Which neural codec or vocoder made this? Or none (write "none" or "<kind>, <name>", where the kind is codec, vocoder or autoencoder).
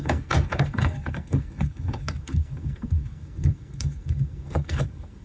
codec, SNAC